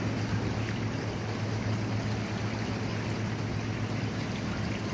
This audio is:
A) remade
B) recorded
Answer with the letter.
B